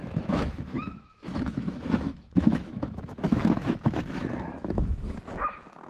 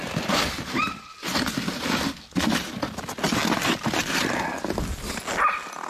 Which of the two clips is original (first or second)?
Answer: second